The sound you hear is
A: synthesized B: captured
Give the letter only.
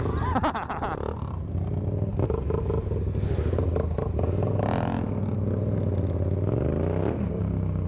B